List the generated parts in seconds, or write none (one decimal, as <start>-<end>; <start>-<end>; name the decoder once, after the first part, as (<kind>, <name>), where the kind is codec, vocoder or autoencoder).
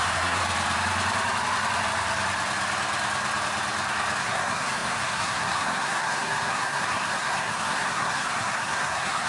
0.0-0.4 (codec, SNAC); 4.2-9.3